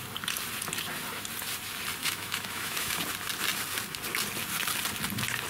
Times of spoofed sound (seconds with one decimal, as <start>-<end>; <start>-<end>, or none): 2.0-3.0

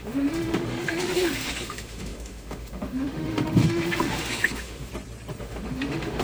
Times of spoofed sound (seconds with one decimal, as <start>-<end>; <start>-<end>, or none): 0.0-4.9; 5.4-6.2